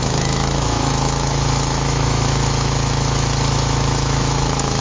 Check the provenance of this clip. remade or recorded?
remade